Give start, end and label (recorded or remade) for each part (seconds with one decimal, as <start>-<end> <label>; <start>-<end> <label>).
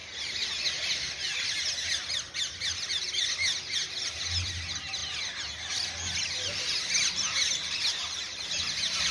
0.0-9.1 recorded